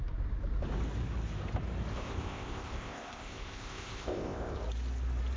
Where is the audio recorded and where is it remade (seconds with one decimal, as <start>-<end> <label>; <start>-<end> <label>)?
0.0-1.9 recorded; 1.9-4.6 remade; 4.6-5.4 recorded